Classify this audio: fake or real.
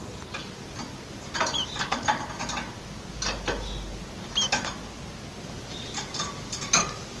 real